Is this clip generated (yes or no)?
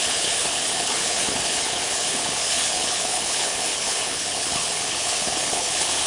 yes